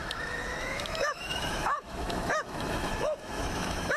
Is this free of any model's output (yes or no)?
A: no